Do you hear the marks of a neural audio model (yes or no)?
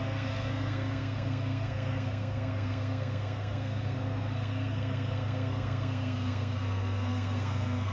yes